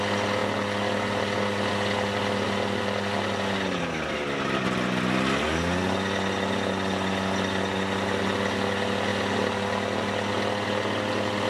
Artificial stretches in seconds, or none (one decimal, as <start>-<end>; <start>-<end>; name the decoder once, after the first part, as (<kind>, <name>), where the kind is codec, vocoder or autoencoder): none